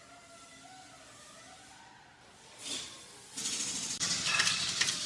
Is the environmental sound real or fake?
real